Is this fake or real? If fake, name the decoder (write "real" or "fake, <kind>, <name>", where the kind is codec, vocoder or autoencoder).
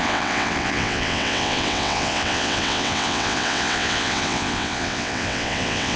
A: fake, vocoder, WaveNeXt